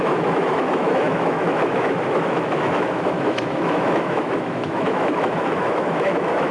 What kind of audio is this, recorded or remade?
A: remade